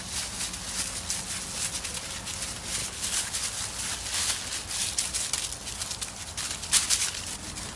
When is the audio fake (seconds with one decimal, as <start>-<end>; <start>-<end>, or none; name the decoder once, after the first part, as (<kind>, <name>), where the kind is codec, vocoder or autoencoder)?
2.8-3.4 (codec, HILCodec)